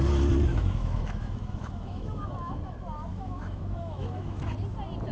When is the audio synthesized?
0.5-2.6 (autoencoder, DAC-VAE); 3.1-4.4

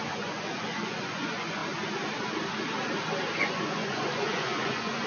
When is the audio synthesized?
0.0-1.6 (vocoder, Vocos); 3.4-5.1

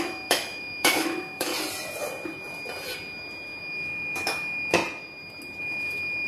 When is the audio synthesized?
0.0-1.5 (autoencoder, DAC-VAE); 3.6-4.8; 5.6-6.3

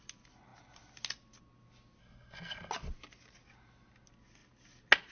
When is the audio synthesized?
2.0-2.7 (codec, SNAC)